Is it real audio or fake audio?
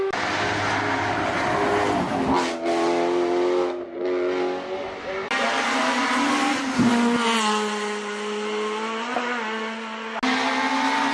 real